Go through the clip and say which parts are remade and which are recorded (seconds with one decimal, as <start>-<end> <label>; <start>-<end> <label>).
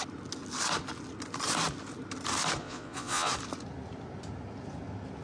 0.0-2.6 recorded; 2.6-3.3 remade; 3.3-5.2 recorded